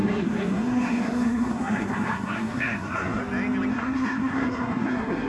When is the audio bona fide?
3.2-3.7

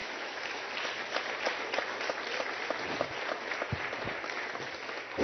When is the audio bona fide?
0.7-5.2

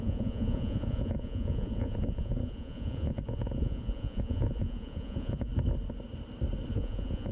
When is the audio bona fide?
5.5-6.7